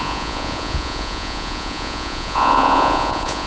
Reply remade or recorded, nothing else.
remade